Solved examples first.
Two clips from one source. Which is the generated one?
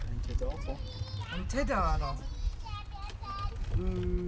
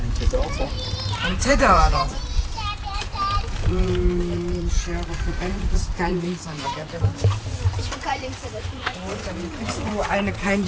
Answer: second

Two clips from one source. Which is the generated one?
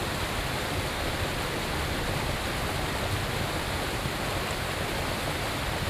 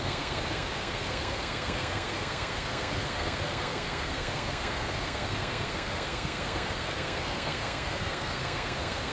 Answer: second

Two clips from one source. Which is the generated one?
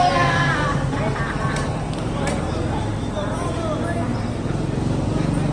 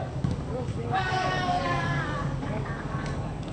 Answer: second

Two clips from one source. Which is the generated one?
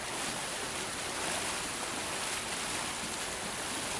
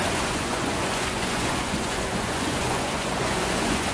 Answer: second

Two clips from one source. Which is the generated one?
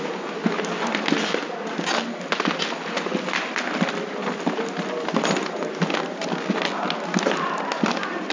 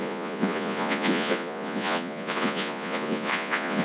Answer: second